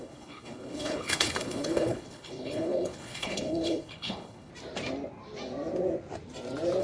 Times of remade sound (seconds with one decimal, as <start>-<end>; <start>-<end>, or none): 0.0-4.5